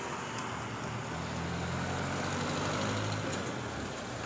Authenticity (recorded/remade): recorded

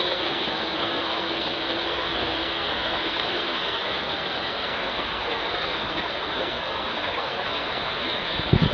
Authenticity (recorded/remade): remade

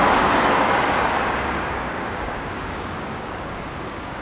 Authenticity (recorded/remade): remade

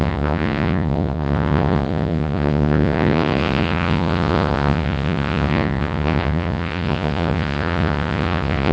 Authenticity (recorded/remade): remade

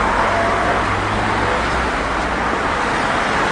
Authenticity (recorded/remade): recorded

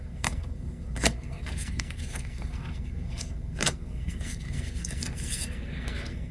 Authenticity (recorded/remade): remade